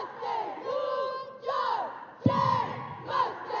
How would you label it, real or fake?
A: real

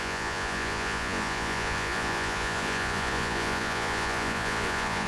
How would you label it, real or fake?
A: fake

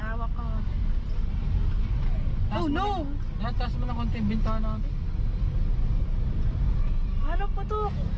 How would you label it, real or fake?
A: real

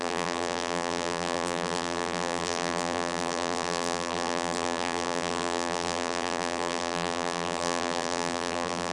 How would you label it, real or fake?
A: fake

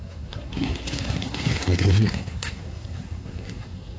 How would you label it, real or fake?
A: fake